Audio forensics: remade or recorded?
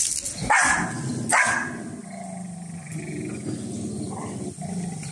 recorded